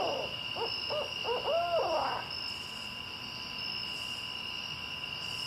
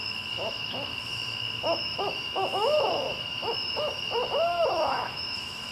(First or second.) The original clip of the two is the first